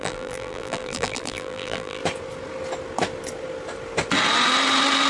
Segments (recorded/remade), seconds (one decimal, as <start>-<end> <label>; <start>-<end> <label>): 0.0-2.0 remade; 2.0-5.1 recorded